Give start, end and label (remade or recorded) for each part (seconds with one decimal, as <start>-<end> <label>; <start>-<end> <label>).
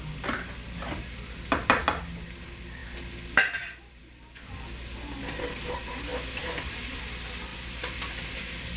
0.0-6.1 recorded; 6.1-7.0 remade; 7.0-7.5 recorded; 7.5-8.2 remade; 8.2-8.8 recorded